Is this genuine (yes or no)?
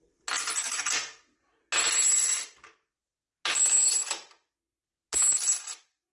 yes